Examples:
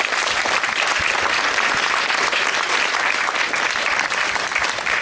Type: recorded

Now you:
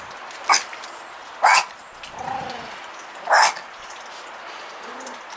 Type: recorded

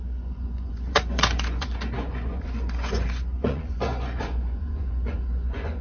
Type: remade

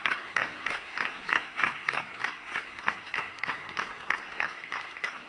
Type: remade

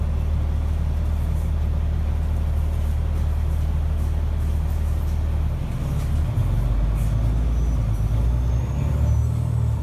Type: recorded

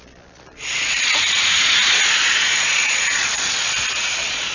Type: remade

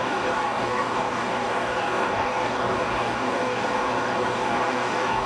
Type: remade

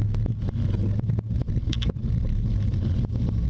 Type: recorded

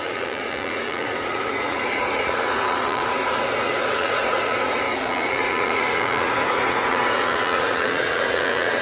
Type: remade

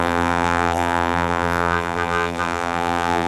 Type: remade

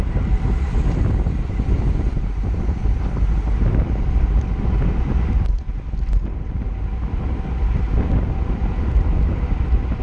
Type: recorded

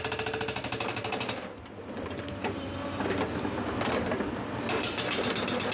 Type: recorded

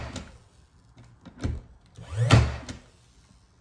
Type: recorded